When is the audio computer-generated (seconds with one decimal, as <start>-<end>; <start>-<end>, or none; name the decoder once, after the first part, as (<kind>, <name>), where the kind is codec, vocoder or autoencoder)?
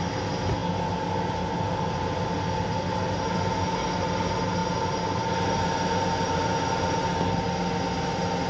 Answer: none